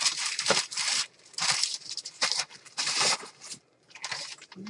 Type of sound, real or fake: fake